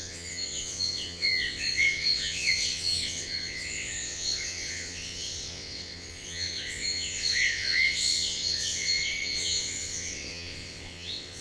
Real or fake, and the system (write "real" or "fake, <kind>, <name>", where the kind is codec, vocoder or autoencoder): fake, vocoder, WaveNeXt